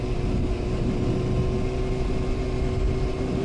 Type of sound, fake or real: real